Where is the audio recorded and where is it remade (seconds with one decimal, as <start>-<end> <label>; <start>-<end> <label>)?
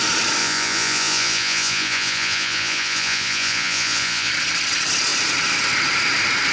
0.0-0.4 recorded; 0.4-4.3 remade; 4.3-6.5 recorded